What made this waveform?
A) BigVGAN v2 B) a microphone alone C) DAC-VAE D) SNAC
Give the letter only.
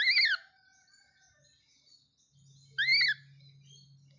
B